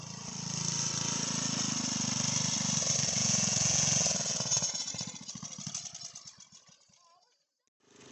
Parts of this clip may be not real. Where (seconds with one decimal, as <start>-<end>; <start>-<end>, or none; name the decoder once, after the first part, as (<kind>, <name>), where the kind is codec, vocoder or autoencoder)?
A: 3.2-4.9 (vocoder, Vocos)